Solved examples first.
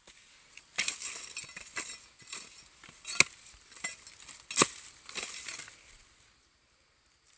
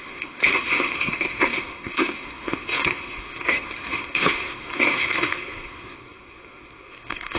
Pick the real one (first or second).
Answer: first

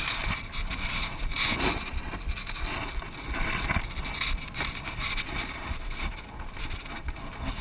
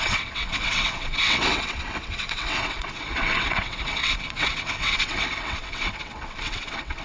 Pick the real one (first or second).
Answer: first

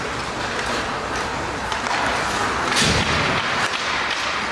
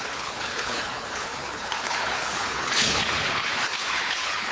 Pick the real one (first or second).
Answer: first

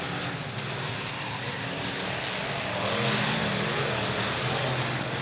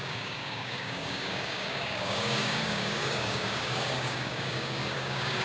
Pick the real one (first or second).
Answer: first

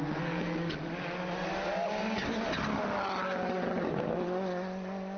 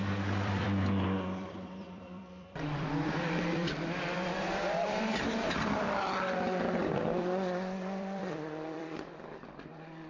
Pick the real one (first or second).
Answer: first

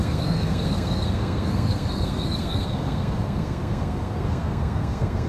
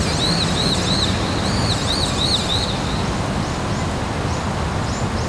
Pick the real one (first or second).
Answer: second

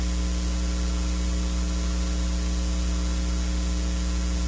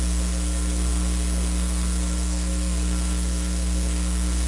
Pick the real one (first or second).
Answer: first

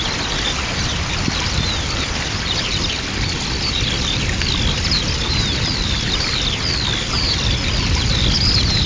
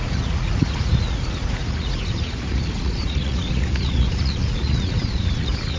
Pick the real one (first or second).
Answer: first